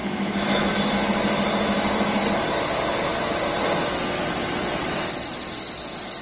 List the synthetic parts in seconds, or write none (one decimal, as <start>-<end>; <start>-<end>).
0.0-0.7